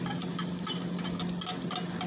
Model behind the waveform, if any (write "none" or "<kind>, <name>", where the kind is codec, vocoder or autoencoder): none